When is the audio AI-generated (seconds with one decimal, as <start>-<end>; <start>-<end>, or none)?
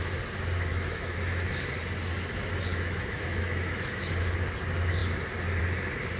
0.7-1.5; 2.7-4.3